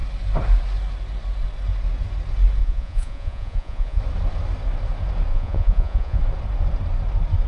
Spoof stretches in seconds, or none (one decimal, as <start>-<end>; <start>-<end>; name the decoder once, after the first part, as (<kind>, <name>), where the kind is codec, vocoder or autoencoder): 2.6-4.0 (vocoder, Vocos); 5.3-6.2